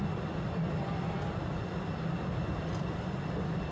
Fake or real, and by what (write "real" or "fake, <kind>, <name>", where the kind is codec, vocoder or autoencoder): real